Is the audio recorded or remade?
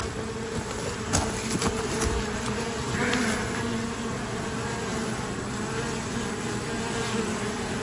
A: recorded